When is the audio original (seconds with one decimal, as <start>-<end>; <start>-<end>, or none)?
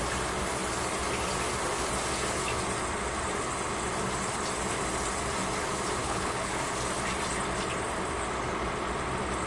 0.0-6.0; 6.6-9.5